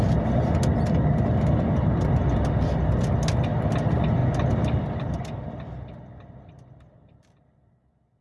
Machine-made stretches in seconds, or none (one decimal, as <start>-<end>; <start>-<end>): none